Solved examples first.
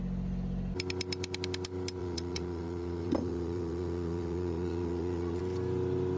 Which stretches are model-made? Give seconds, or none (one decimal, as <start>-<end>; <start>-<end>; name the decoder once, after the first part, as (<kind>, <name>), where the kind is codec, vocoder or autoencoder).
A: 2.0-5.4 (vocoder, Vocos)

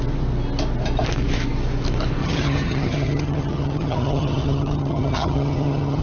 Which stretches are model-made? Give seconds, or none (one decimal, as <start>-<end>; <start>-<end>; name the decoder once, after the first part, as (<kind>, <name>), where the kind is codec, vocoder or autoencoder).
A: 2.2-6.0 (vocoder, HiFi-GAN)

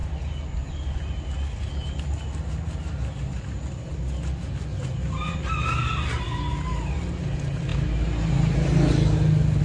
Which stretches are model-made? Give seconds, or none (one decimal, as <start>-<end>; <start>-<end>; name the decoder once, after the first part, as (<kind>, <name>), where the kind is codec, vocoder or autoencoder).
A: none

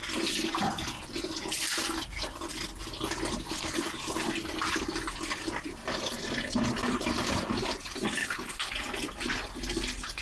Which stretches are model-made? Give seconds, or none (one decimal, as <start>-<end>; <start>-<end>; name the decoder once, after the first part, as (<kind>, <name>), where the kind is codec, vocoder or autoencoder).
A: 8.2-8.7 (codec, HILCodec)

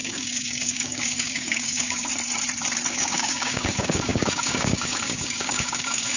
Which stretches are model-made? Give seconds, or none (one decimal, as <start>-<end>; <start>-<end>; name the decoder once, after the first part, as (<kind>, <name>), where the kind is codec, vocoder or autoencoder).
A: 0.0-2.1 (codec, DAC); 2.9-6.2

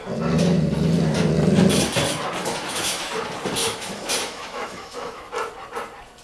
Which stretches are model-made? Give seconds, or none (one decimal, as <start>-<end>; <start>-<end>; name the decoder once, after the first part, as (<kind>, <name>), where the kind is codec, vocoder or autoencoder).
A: 2.4-3.1 (autoencoder, DAC-VAE); 3.6-5.3